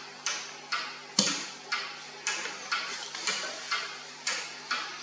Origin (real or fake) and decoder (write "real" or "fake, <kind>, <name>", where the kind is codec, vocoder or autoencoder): real